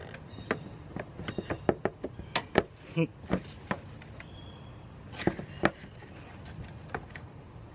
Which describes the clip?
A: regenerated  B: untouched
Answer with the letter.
B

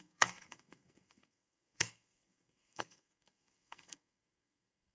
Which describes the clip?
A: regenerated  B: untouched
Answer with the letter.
A